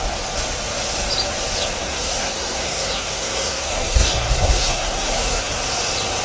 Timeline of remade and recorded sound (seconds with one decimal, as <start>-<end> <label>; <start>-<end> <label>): 0.0-1.8 recorded; 1.8-5.5 remade; 5.5-6.2 recorded